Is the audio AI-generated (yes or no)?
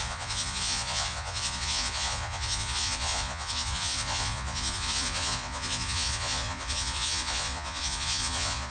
yes